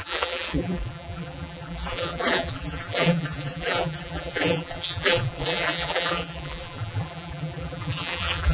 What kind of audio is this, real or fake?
fake